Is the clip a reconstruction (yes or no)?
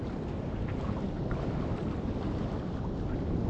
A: no